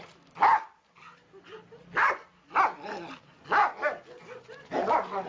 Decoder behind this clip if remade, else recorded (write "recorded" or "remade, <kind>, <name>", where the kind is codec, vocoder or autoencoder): recorded